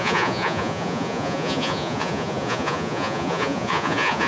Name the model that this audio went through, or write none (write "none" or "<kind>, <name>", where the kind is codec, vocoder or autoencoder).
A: vocoder, Vocos